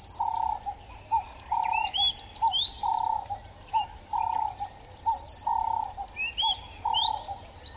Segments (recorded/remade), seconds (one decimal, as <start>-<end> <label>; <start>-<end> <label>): 0.0-7.8 recorded